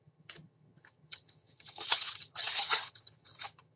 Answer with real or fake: fake